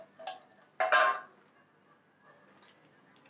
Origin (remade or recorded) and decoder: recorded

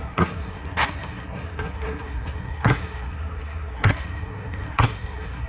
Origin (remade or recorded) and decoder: remade, codec, SNAC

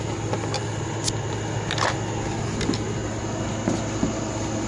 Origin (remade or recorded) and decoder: recorded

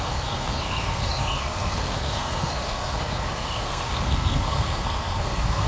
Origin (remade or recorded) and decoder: remade, codec, SNAC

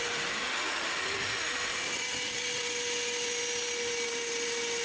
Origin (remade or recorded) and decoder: recorded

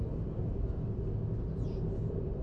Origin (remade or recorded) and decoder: recorded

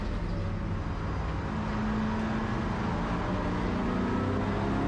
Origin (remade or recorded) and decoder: recorded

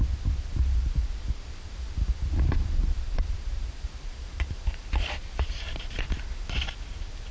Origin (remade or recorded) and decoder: recorded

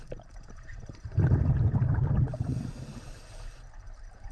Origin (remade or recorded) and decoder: recorded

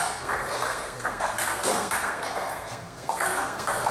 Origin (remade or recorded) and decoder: remade, codec, SNAC